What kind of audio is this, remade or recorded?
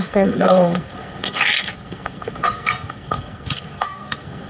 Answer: remade